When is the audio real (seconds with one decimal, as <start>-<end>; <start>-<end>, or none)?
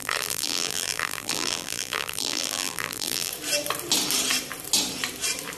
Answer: 3.3-5.6